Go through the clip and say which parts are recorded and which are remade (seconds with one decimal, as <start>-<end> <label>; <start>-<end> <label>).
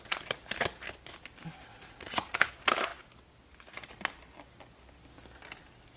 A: 0.0-1.7 recorded; 1.7-2.5 remade; 2.5-6.0 recorded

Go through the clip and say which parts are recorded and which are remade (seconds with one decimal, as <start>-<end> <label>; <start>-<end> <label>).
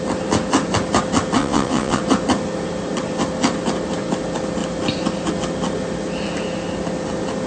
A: 0.0-1.4 recorded; 1.4-2.0 remade; 2.0-7.5 recorded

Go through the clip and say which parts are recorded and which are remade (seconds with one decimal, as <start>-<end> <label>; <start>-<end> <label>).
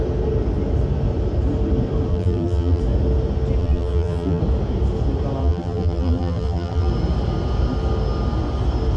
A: 0.0-2.1 recorded; 2.1-2.8 remade; 2.8-3.6 recorded; 3.6-4.4 remade; 4.4-5.4 recorded; 5.4-6.9 remade; 6.9-9.0 recorded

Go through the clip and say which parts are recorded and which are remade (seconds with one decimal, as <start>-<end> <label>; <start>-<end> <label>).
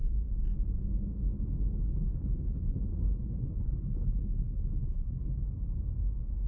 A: 0.0-1.8 recorded; 1.8-5.4 remade; 5.4-6.5 recorded